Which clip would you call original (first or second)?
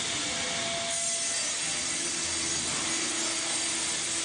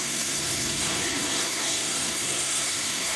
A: first